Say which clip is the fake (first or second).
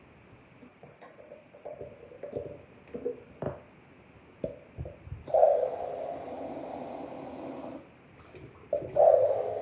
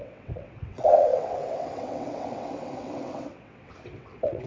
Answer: second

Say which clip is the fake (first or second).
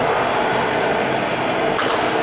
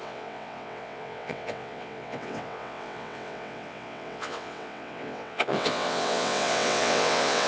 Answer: second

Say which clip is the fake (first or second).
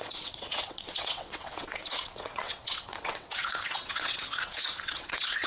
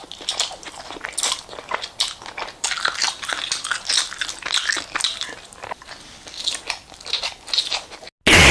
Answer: first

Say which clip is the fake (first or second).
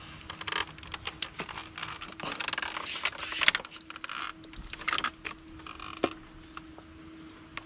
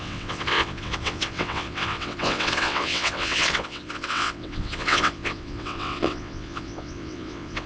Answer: second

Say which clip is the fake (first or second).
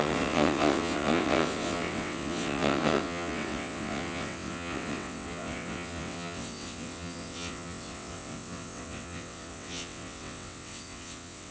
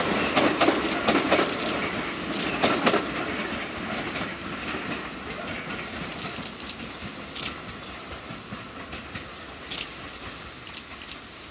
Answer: first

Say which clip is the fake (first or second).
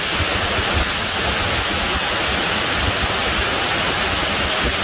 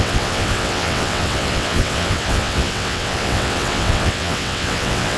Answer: second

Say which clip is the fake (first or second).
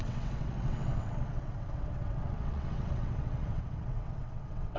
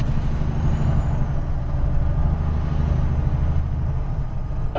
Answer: first